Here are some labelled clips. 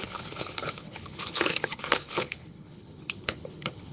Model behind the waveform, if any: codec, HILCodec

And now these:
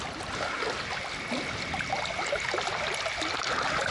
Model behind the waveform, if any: none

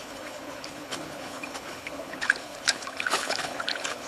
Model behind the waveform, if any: codec, HILCodec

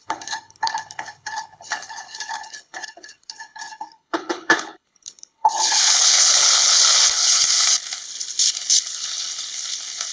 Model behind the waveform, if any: codec, HILCodec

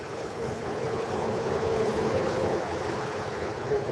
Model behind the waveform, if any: codec, HILCodec